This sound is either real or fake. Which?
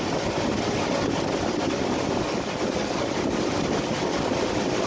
real